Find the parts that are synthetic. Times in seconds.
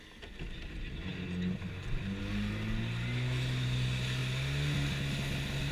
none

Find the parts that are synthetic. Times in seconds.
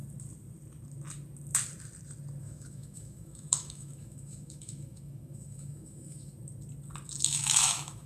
2.4-6.3 (autoencoder, DAC-VAE); 7.2-8.1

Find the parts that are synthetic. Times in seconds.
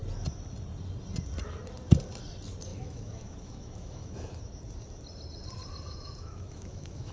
2.7-4.4 (autoencoder, DAC-VAE); 5.9-7.1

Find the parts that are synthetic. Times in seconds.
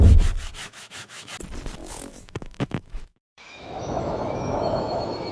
0.6-1.3 (autoencoder, DAC-VAE); 1.8-5.3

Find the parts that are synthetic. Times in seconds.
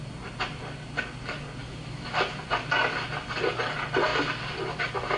1.6-2.2 (autoencoder, DAC-VAE)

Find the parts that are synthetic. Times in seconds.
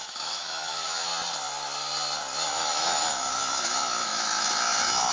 0.0-1.1 (autoencoder, DAC-VAE); 2.5-5.1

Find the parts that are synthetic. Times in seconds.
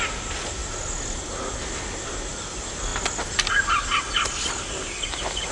none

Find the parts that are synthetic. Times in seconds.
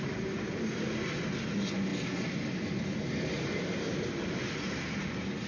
none